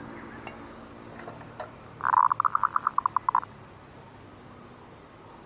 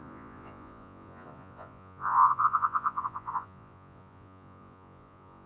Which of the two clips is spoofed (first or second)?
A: second